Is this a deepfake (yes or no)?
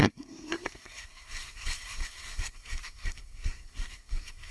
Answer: yes